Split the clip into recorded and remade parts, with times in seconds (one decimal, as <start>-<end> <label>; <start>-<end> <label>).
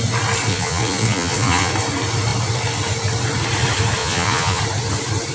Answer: 0.0-0.5 recorded; 0.5-1.7 remade; 1.7-4.0 recorded; 4.0-4.6 remade; 4.6-5.3 recorded